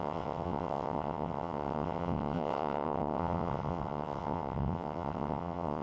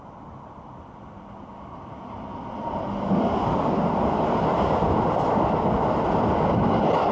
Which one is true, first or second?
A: second